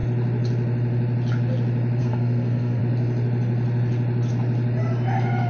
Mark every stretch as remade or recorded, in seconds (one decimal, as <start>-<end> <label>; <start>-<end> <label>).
0.0-2.0 recorded; 2.0-2.8 remade; 2.8-5.5 recorded